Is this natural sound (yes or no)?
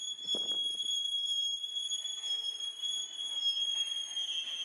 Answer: yes